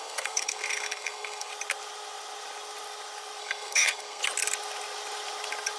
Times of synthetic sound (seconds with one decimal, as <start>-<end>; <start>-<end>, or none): 0.0-1.5; 3.4-4.2